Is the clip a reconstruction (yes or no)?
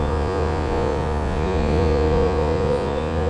yes